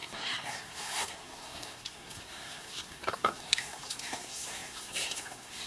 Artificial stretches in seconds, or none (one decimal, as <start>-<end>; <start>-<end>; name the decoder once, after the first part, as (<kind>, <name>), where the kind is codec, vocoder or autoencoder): 0.0-5.7 (codec, SNAC)